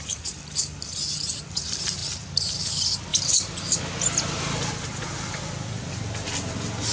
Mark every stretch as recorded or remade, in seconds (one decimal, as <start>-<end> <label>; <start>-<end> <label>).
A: 0.0-6.9 remade